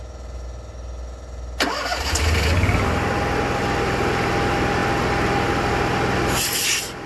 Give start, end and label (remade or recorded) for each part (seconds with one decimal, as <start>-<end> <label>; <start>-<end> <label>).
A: 0.0-7.1 recorded